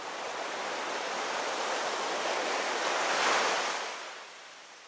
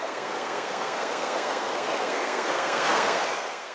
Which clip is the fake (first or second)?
second